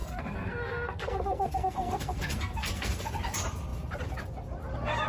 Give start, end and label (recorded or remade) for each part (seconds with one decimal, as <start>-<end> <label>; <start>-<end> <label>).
0.0-3.1 remade; 3.1-5.1 recorded